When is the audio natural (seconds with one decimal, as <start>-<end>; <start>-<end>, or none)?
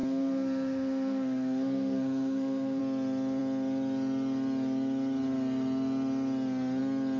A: 2.8-7.2